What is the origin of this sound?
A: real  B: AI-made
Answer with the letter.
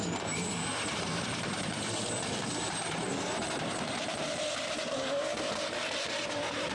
B